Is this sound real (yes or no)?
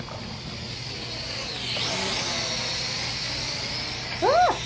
yes